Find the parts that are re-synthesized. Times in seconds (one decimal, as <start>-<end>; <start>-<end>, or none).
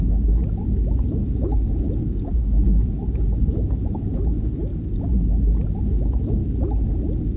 0.0-0.4; 1.0-4.7; 5.8-6.4